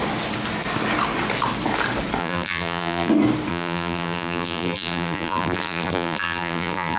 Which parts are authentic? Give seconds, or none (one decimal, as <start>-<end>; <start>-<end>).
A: 0.0-2.2; 3.1-3.5